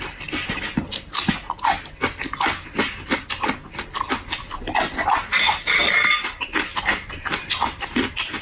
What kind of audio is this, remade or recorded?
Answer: recorded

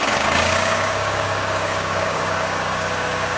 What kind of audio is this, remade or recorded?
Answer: remade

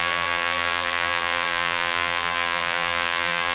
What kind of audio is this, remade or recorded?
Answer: remade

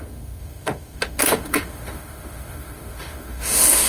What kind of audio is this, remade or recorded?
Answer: remade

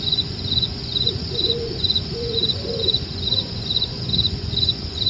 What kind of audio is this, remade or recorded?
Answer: remade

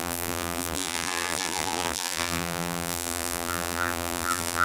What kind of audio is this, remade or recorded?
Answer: remade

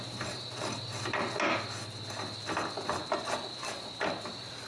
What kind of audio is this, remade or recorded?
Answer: recorded